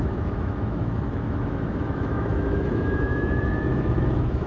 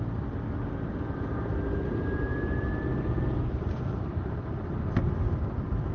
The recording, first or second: second